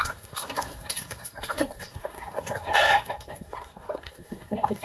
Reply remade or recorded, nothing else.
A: remade